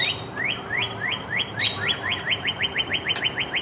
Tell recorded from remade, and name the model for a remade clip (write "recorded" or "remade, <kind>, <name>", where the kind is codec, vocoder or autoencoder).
recorded